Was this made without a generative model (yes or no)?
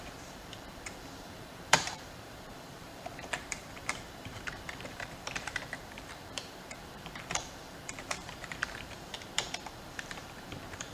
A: no